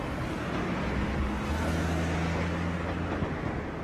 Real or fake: real